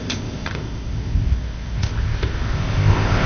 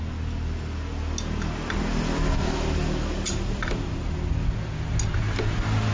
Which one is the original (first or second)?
second